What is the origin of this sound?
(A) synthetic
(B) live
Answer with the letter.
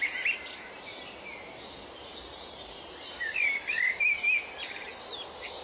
A